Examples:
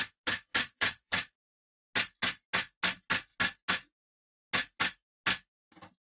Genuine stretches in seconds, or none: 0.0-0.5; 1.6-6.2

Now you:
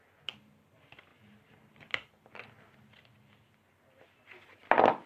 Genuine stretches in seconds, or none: 0.0-5.1

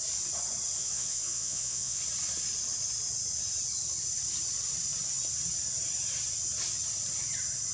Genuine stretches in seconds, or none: 0.0-0.8; 2.0-7.7

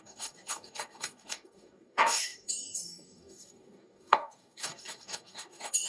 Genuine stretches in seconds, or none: none

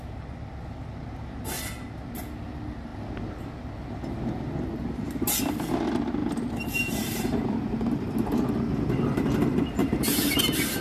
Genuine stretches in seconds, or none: 0.0-6.2; 8.5-9.8